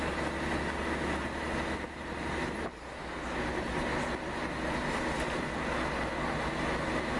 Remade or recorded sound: recorded